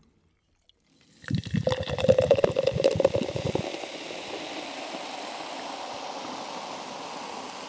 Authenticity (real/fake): real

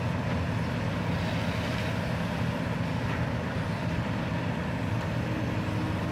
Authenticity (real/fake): real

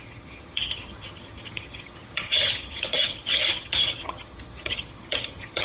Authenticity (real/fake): fake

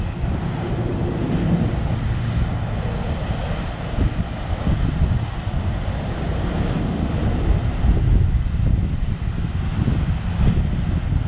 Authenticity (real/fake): real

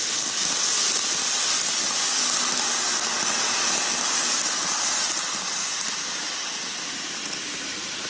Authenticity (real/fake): real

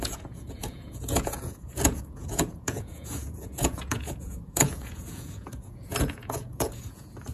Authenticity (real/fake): fake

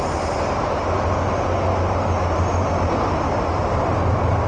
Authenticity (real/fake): real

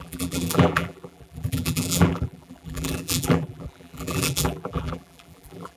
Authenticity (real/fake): fake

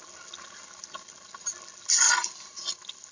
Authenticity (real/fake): real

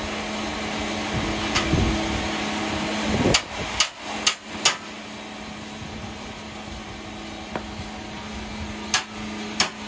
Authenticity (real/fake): real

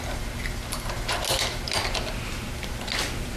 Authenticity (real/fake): real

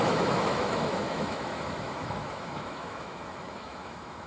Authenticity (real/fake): fake